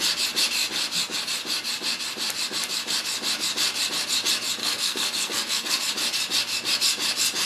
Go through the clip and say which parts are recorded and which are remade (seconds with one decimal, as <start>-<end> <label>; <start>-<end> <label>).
0.0-4.6 recorded; 4.6-5.8 remade; 5.8-7.5 recorded